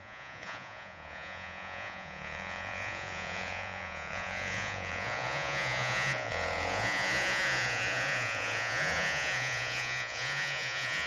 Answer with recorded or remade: remade